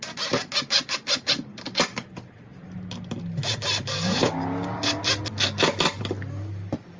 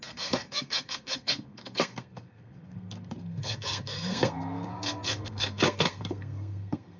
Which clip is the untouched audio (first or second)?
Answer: first